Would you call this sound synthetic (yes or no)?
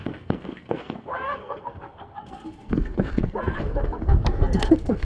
yes